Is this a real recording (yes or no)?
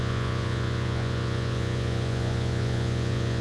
no